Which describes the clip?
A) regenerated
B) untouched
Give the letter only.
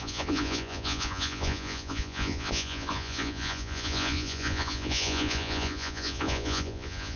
A